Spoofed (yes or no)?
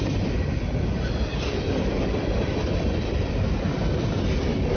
yes